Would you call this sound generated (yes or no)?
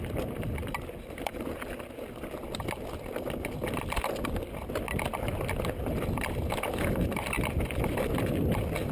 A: no